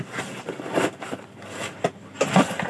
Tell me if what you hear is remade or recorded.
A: recorded